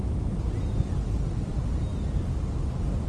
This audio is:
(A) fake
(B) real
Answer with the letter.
B